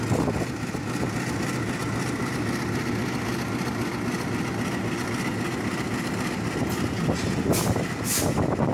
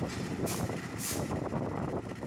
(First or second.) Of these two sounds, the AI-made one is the second